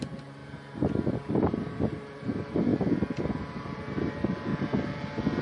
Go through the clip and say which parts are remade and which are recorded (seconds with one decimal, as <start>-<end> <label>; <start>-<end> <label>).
0.0-0.4 remade; 0.4-1.3 recorded; 1.3-2.7 remade; 2.7-3.4 recorded; 3.4-4.5 remade; 4.5-5.4 recorded